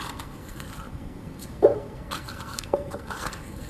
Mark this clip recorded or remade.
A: remade